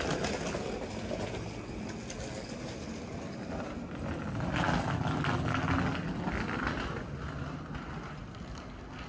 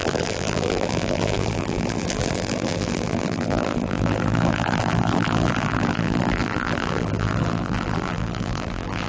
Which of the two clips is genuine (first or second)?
first